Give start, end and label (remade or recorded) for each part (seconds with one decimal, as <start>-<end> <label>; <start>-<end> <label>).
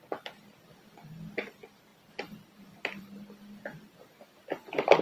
0.0-5.0 recorded